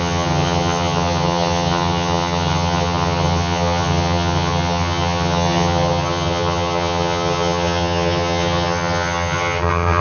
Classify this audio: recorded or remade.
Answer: remade